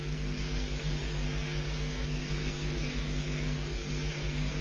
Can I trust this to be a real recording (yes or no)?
no